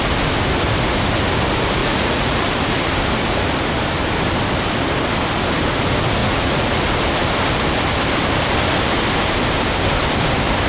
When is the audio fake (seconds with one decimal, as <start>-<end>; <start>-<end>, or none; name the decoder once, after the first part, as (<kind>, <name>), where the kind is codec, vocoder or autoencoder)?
1.8-2.4 (vocoder, Vocos); 6.2-6.8